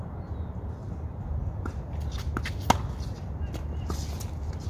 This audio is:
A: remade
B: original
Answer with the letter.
B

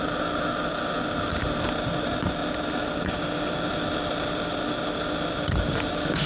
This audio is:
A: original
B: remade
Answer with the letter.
A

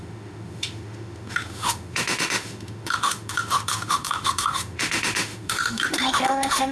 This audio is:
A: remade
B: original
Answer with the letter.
A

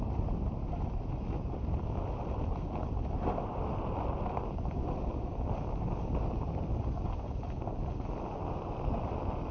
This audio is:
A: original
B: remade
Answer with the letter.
A